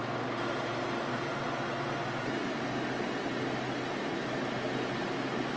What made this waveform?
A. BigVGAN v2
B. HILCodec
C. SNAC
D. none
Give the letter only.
D